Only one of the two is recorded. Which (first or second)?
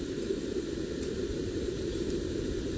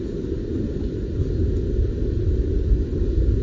second